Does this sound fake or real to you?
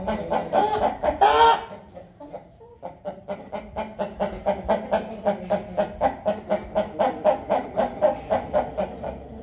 real